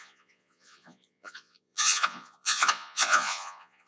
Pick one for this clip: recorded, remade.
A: remade